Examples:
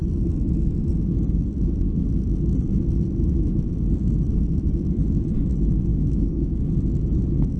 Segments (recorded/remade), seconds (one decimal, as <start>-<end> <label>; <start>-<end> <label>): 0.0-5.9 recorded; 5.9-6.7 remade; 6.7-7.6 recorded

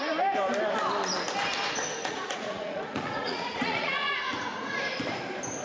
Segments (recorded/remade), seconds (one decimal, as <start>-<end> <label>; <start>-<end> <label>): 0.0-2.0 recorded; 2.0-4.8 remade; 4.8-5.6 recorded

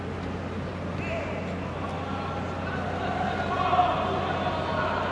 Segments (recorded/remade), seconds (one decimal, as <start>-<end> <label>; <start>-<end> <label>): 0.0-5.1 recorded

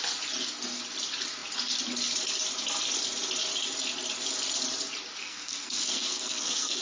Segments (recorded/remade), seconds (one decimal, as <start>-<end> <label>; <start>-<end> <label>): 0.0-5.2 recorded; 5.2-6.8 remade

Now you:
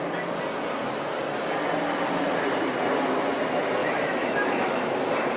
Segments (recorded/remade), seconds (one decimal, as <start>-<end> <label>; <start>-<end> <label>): 0.0-3.8 recorded; 3.8-4.9 remade; 4.9-5.4 recorded